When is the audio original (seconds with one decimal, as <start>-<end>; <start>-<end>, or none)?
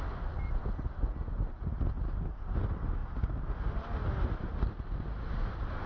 0.0-5.9